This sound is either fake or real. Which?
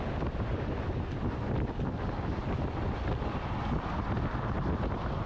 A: real